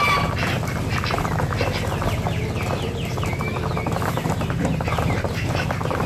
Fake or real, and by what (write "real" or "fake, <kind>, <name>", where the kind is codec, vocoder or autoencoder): real